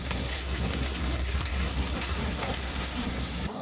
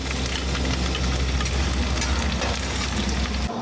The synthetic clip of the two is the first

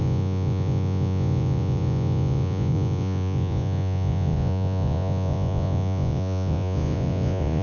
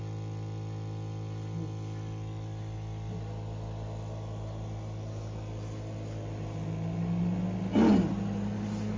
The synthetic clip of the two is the first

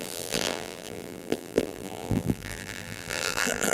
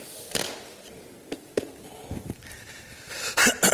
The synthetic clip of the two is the first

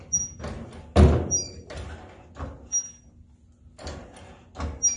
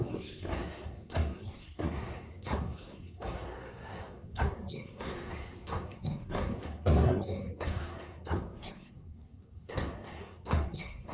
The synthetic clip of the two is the second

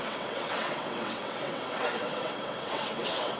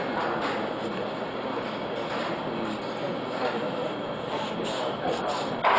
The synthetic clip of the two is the first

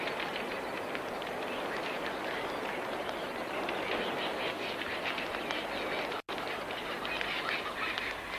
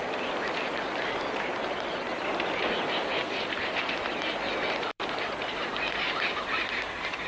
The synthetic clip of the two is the second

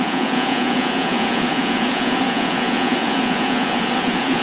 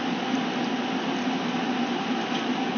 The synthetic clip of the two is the first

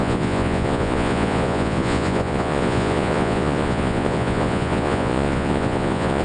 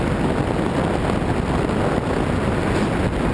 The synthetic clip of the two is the first